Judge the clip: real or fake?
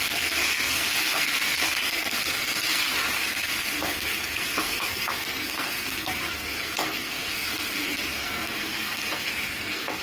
fake